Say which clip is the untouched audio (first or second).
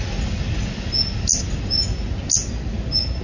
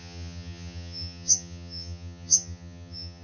first